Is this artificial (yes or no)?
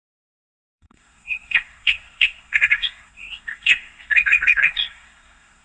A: yes